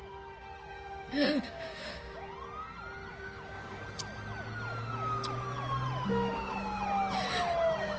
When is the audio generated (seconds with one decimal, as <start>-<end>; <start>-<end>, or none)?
0.7-2.3; 3.1-3.8; 6.1-6.8

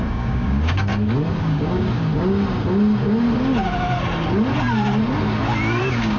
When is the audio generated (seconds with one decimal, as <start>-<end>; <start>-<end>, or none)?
0.0-0.9; 1.4-2.1; 5.8-6.2